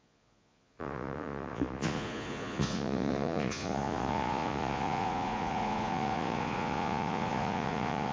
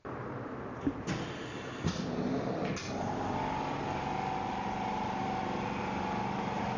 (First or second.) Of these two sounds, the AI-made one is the first